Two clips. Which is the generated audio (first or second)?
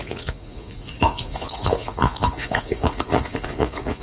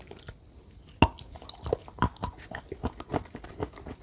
first